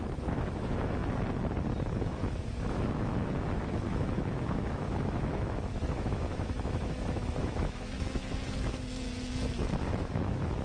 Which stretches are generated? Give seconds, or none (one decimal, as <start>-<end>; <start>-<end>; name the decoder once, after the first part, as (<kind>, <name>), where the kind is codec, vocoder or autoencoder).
0.0-1.0 (autoencoder, DAC-VAE); 2.0-10.6

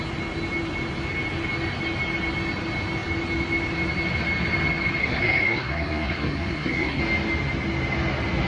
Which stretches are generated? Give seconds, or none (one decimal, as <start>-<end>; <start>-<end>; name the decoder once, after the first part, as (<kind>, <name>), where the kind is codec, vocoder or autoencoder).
5.0-7.0 (codec, SNAC)

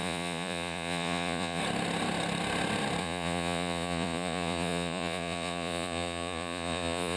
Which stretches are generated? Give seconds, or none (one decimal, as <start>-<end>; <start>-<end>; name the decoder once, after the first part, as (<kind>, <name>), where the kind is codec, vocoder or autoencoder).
0.0-1.6 (vocoder, Vocos); 3.0-7.2

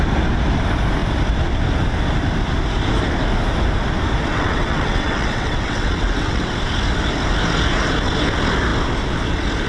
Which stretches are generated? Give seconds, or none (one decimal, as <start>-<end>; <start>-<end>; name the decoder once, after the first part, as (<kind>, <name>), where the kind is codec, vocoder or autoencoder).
4.3-6.5 (vocoder, WaveNeXt)

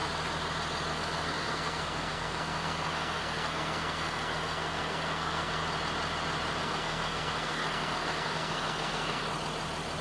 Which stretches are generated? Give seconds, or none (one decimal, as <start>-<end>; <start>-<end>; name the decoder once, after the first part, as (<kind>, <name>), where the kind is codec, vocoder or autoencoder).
0.9-5.6 (codec, SNAC); 6.6-9.2